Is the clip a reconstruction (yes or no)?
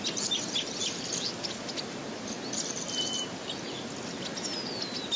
no